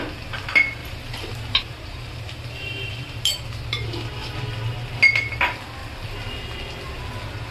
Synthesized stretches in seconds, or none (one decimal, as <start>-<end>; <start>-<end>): 0.8-3.3